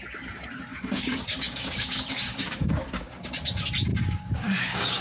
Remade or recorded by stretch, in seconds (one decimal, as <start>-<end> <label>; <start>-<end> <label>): 0.0-0.7 recorded; 0.7-3.3 remade; 3.3-3.9 recorded; 3.9-5.0 remade